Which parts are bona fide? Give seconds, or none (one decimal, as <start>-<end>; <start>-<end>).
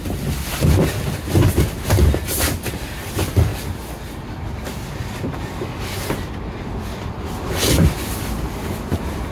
0.0-9.3